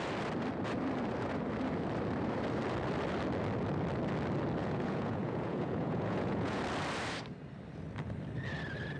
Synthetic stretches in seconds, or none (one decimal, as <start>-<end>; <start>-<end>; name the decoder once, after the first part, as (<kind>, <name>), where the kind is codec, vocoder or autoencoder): 4.6-6.6 (vocoder, Vocos)